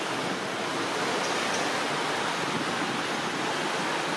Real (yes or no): yes